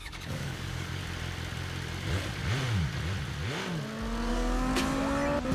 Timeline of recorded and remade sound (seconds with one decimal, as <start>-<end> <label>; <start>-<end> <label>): 0.0-1.0 remade; 1.0-4.3 recorded; 4.3-4.7 remade; 4.7-5.5 recorded